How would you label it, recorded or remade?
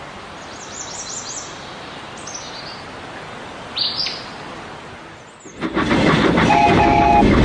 recorded